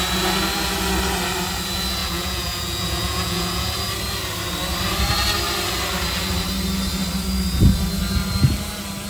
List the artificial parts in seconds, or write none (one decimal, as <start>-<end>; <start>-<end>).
2.0-3.8